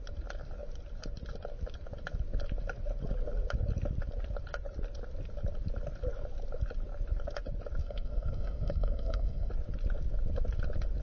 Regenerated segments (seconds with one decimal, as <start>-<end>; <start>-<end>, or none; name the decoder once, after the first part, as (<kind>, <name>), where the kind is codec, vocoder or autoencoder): 7.8-9.5 (codec, SNAC)